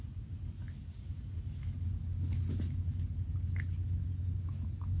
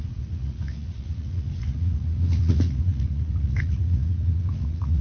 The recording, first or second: first